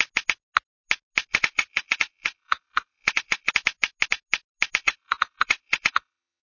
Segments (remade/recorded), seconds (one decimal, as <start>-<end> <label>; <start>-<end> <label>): 0.0-1.3 recorded; 1.3-3.5 remade; 3.5-4.8 recorded; 4.8-6.4 remade